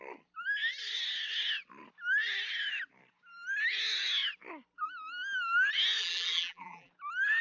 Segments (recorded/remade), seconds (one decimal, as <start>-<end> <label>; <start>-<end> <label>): 0.0-6.0 recorded; 6.0-6.9 remade; 6.9-7.4 recorded